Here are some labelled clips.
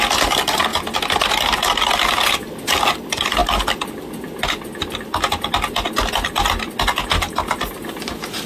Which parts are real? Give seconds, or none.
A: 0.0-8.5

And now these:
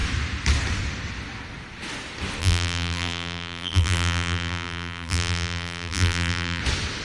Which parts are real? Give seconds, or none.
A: 0.0-2.4; 6.6-7.0